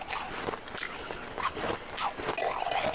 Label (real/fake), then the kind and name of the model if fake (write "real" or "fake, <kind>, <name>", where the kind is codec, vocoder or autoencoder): real